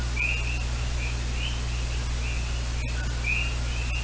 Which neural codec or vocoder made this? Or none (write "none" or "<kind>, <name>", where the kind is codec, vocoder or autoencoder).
none